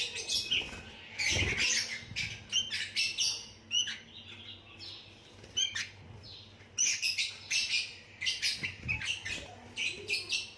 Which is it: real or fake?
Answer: real